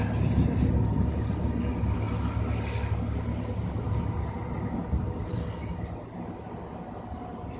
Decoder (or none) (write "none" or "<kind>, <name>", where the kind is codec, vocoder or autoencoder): none